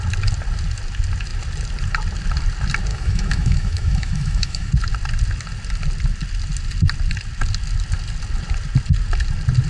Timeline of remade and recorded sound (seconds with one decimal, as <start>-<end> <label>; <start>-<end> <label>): 0.0-2.9 recorded; 2.9-4.7 remade; 4.7-9.7 recorded